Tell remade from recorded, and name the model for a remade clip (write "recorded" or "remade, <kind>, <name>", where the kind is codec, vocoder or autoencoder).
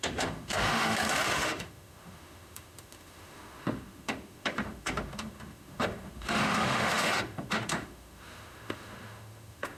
remade, autoencoder, DAC-VAE